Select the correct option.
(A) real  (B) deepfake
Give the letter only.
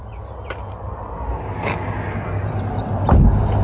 A